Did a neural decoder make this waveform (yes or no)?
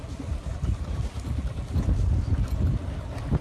no